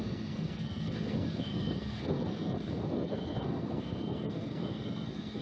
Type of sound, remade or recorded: remade